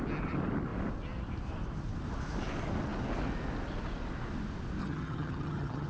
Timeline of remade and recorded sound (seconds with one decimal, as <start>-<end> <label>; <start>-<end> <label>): 0.0-4.8 recorded; 4.8-5.9 remade